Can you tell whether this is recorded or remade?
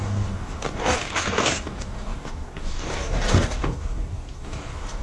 remade